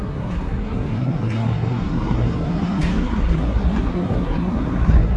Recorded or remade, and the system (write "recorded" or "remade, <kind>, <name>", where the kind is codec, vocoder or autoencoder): remade, codec, SNAC